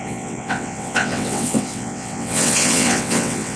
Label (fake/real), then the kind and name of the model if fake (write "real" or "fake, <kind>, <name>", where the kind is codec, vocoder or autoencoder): fake, vocoder, WaveNeXt